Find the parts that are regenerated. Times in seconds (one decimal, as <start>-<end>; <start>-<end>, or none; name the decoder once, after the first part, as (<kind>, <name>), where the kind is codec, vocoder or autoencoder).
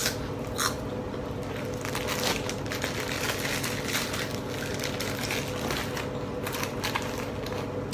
none